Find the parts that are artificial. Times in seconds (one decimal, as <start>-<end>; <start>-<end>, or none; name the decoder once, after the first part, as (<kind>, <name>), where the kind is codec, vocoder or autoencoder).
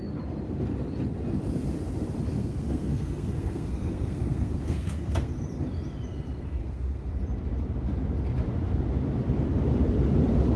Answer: 2.4-5.3 (codec, SNAC); 6.6-7.1